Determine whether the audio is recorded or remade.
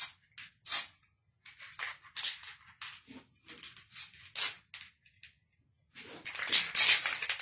recorded